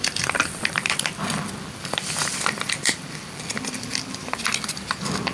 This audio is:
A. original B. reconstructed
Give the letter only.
B